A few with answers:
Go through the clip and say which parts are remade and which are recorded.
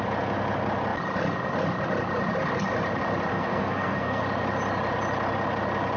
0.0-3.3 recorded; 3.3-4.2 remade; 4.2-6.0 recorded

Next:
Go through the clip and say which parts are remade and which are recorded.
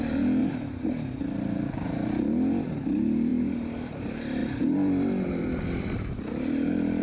0.0-0.4 recorded; 0.4-2.2 remade; 2.2-7.0 recorded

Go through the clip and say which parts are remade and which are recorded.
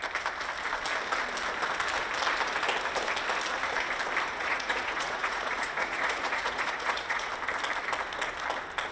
0.0-4.3 recorded; 4.3-7.3 remade; 7.3-8.9 recorded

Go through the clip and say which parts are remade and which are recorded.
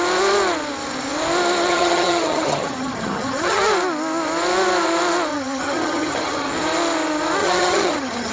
0.0-1.7 recorded; 1.7-3.6 remade; 3.6-5.3 recorded; 5.3-6.5 remade; 6.5-7.4 recorded; 7.4-8.3 remade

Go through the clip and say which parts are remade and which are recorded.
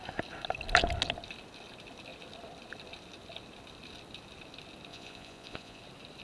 0.0-4.9 recorded; 4.9-5.8 remade; 5.8-6.2 recorded